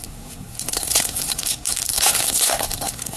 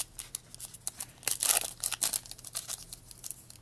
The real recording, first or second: second